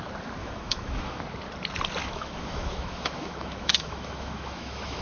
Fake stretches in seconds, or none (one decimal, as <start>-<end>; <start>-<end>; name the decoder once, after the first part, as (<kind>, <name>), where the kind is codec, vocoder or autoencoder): 0.4-1.2 (autoencoder, DAC-VAE); 2.0-5.0